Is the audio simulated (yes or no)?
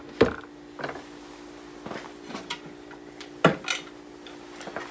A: no